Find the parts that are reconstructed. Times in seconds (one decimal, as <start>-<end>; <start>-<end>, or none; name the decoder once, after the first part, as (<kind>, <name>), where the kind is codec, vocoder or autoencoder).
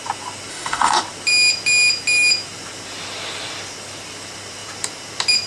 0.5-1.0 (autoencoder, DAC-VAE)